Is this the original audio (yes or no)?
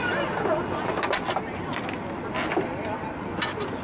yes